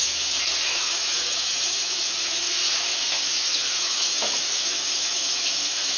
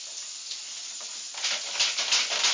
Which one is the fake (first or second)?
first